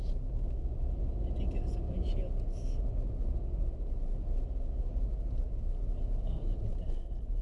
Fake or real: real